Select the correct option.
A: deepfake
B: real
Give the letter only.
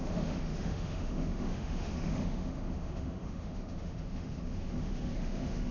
A